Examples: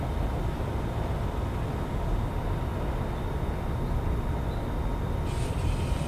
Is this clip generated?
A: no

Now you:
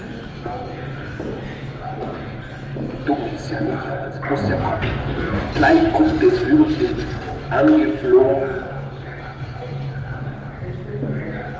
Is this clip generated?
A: no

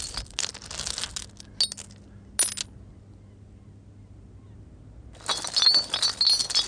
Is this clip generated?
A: no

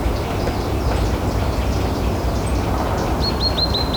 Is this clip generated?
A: no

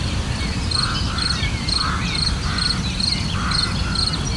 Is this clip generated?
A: no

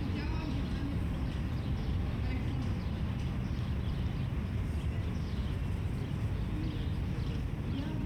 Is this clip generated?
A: no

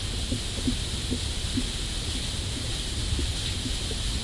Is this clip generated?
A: no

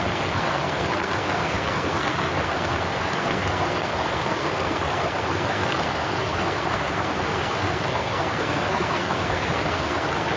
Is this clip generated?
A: yes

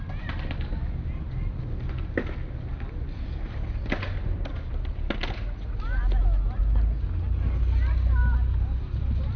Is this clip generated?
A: no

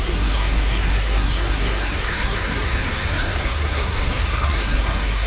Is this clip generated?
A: yes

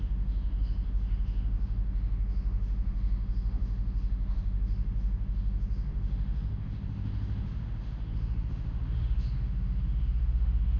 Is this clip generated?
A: yes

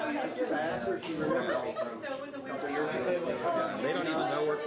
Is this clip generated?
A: no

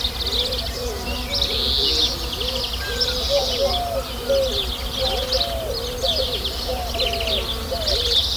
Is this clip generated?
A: no